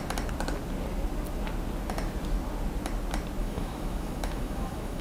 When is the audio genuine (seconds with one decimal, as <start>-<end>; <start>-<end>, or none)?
0.0-3.4